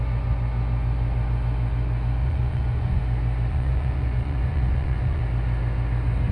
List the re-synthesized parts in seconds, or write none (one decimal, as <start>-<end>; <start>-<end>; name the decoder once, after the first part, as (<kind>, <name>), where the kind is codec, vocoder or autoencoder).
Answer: 2.2-3.0 (vocoder, Vocos); 3.5-5.2

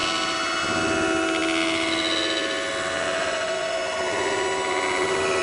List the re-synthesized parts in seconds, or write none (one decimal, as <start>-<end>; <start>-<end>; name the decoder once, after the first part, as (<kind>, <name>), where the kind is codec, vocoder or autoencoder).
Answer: 3.2-4.0 (vocoder, Vocos)

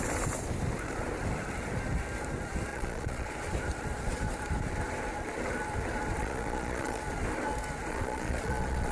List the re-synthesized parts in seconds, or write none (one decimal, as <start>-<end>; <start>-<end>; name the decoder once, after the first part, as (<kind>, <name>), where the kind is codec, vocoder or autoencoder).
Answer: 2.7-3.3 (vocoder, Vocos); 6.2-7.0; 7.9-8.9

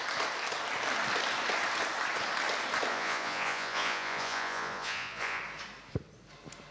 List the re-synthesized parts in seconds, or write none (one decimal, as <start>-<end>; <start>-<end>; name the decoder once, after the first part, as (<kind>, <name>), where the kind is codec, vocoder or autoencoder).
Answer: 2.9-5.4 (vocoder, Vocos)

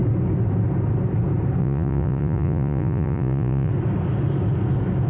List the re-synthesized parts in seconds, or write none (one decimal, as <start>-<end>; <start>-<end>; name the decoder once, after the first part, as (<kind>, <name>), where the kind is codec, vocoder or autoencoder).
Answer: 1.6-3.7 (vocoder, Vocos)

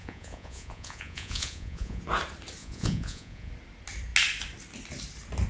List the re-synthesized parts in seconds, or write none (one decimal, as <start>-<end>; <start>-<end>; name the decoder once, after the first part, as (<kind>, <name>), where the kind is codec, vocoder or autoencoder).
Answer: 0.0-2.0 (vocoder, Vocos); 2.6-3.5